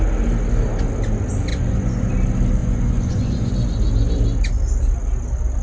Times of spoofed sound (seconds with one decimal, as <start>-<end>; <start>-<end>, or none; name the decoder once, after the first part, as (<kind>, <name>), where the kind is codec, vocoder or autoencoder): 1.5-2.1 (vocoder, Vocos); 2.6-3.5